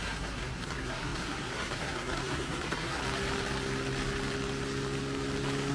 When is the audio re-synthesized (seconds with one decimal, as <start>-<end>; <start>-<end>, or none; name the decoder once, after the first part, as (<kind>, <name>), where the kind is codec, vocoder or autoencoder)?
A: 0.0-3.0 (codec, SNAC)